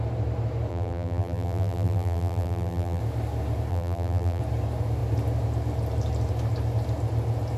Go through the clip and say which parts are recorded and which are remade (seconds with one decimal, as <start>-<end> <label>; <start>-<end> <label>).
0.0-0.7 recorded; 0.7-3.0 remade; 3.0-3.7 recorded; 3.7-4.4 remade; 4.4-7.6 recorded